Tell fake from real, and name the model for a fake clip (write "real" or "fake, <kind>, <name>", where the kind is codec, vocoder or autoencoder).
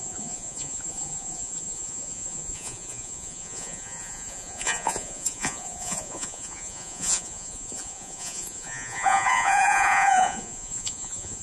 fake, vocoder, Vocos